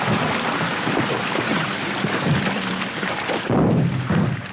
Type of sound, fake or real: fake